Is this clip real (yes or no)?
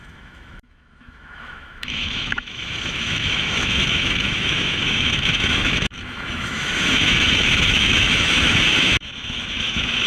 no